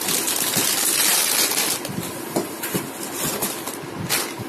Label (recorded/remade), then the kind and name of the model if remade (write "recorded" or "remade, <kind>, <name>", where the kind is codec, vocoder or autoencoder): recorded